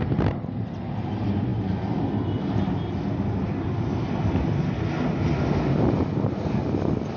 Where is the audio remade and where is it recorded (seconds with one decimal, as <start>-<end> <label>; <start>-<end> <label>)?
0.0-7.2 recorded